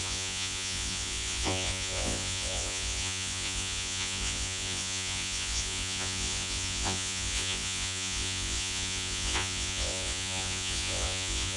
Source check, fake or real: fake